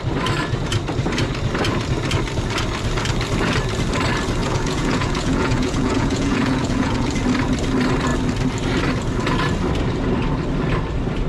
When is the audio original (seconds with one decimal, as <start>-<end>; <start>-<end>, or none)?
0.0-4.4; 7.1-11.3